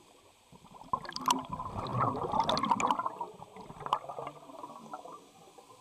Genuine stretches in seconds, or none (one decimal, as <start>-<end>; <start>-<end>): 0.0-5.8